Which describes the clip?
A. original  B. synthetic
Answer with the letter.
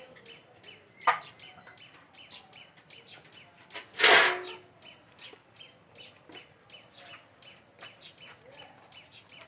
A